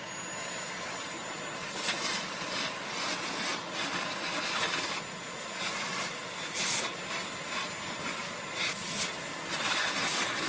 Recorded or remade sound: recorded